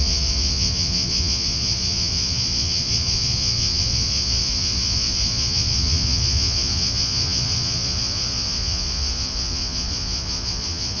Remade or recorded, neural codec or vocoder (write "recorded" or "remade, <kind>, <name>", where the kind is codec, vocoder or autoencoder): remade, vocoder, Vocos